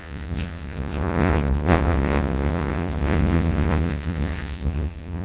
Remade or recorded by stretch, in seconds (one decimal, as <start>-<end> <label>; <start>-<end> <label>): 0.0-5.2 remade